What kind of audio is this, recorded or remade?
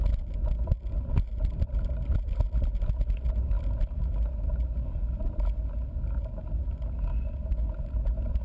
recorded